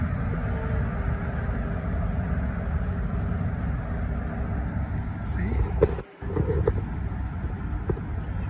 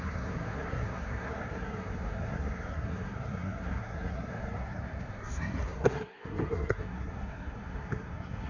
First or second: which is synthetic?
second